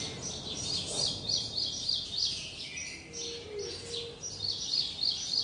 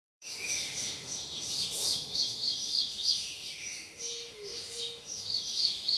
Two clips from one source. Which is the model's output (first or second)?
second